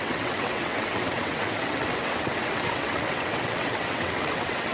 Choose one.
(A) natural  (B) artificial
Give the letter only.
B